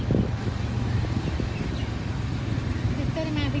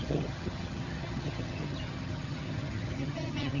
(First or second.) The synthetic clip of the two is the second